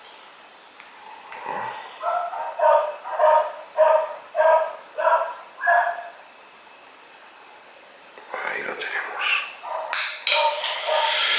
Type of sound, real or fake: real